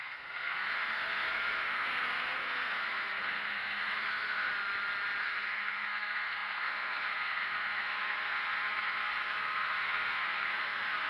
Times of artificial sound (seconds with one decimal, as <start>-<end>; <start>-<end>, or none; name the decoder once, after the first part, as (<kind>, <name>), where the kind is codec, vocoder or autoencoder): 0.0-4.5 (codec, SNAC); 5.2-11.1

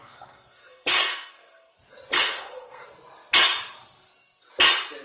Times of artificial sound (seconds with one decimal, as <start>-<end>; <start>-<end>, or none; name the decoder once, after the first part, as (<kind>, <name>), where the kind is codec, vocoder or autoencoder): 0.0-1.7 (codec, SNAC); 2.1-2.8

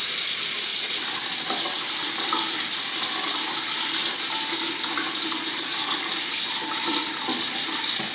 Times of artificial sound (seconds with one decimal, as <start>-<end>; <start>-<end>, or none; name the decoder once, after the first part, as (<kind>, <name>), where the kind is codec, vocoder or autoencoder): none